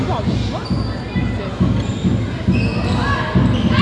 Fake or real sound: real